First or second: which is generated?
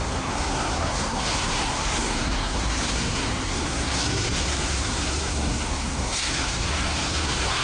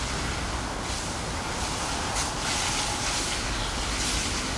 first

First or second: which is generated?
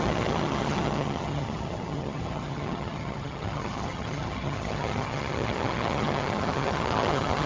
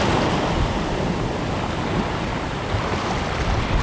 first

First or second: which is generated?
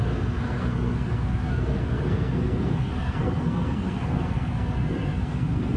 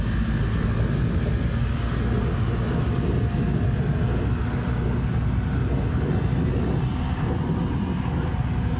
first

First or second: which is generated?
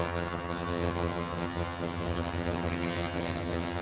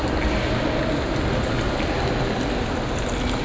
first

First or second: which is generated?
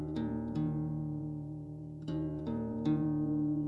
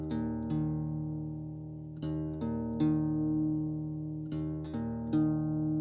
first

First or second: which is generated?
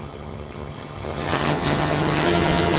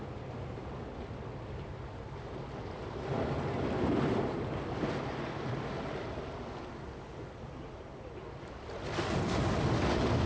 first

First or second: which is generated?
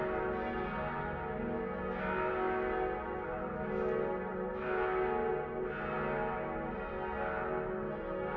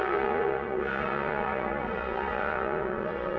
second